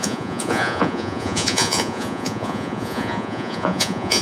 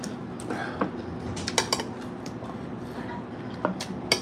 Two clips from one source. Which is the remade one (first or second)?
first